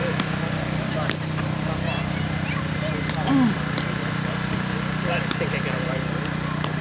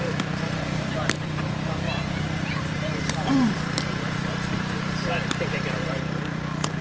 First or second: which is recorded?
first